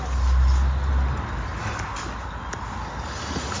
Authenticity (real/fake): real